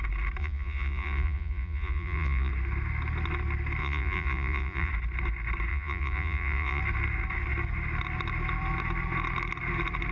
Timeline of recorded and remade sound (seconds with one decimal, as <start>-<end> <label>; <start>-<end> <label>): 0.0-0.4 recorded; 0.4-2.5 remade; 2.5-3.8 recorded; 3.8-4.9 remade; 4.9-5.7 recorded; 5.7-6.8 remade; 6.8-10.1 recorded